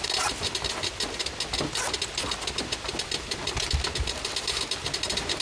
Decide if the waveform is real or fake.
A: real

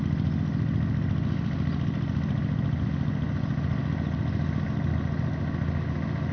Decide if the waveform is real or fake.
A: real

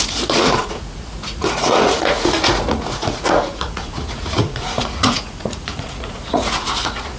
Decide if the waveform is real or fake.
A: fake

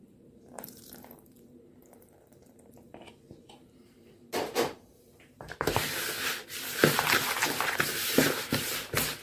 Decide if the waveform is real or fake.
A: fake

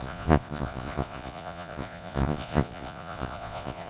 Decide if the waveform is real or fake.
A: fake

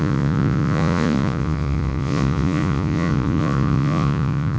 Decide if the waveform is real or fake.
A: fake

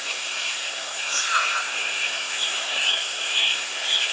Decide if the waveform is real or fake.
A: fake